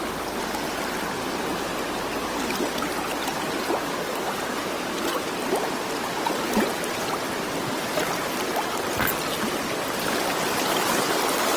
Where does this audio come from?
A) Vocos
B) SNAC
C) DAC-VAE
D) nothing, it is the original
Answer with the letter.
D